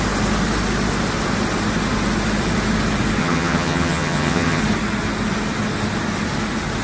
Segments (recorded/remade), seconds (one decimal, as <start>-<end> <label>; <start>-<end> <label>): 0.0-3.2 recorded; 3.2-4.6 remade; 4.6-6.8 recorded